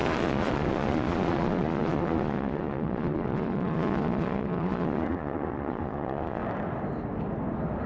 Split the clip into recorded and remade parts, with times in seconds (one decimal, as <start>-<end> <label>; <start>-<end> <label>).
0.0-6.4 remade; 6.4-7.9 recorded